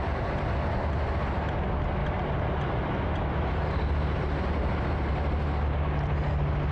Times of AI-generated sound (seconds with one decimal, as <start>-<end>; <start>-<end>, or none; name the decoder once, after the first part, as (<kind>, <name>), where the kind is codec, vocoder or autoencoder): none